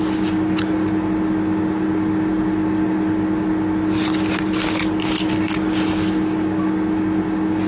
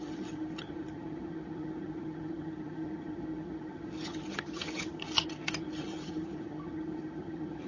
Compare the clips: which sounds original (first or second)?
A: first